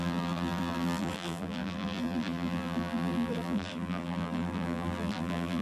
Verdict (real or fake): fake